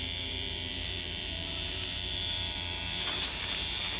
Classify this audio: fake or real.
fake